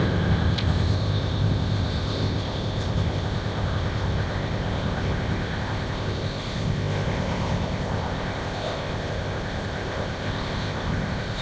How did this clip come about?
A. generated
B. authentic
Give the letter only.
A